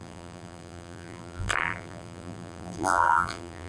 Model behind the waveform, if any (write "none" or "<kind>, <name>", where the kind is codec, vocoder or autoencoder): vocoder, BigVGAN v2